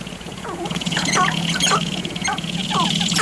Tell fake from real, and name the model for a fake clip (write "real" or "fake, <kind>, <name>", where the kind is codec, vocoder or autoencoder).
fake, vocoder, Vocos